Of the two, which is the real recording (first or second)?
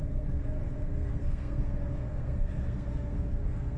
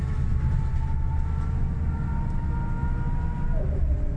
second